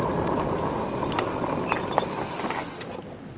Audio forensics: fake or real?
fake